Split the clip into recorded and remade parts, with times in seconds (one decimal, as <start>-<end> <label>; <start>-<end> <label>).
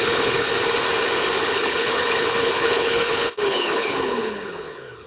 0.0-0.5 remade; 0.5-1.4 recorded; 1.4-5.1 remade